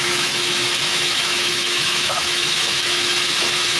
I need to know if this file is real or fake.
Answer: fake